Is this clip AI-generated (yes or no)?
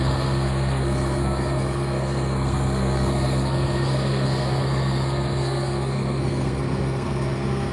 yes